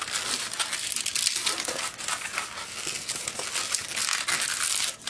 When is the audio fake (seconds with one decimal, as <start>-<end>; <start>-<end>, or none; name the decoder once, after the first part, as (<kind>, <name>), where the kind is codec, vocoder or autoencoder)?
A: none